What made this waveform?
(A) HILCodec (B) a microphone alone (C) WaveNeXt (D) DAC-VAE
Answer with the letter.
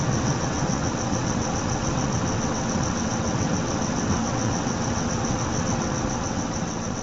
C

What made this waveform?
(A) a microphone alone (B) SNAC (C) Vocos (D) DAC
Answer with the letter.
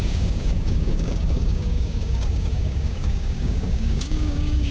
D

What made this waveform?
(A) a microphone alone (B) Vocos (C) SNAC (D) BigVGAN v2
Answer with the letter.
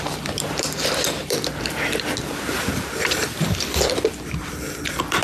D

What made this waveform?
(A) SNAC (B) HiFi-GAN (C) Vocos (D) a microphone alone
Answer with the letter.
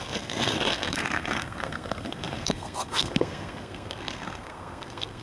A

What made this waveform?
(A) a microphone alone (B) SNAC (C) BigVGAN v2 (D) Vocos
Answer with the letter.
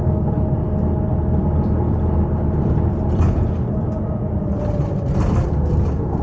A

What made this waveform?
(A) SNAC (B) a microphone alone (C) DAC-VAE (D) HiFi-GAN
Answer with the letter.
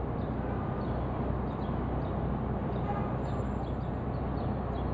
B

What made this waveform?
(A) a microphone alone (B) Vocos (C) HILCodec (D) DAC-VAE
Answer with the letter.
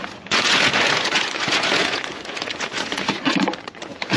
B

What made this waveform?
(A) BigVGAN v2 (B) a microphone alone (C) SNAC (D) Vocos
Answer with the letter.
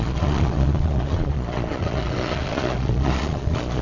D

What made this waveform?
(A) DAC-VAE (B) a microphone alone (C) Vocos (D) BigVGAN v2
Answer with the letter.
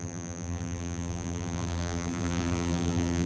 D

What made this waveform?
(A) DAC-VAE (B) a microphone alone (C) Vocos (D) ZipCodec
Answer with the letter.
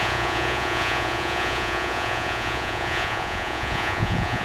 C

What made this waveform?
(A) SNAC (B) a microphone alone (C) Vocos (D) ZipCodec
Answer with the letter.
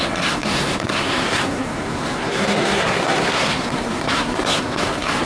A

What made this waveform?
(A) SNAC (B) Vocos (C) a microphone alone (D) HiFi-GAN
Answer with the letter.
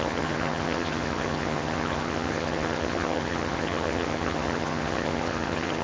D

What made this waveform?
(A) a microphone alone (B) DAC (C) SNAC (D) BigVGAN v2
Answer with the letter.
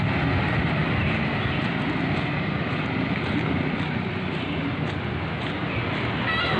A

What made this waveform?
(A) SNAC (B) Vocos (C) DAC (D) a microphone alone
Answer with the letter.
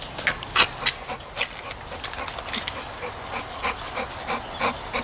D